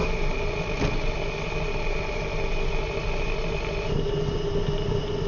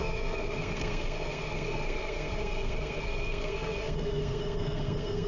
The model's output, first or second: second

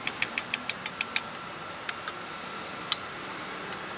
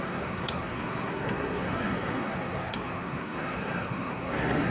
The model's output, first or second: second